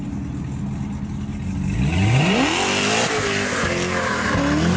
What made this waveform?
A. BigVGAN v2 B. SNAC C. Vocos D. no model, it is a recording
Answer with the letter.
D